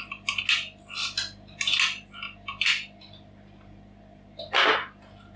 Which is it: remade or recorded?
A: recorded